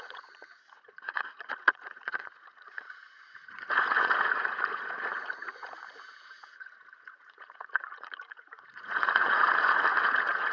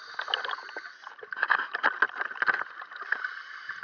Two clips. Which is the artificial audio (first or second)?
first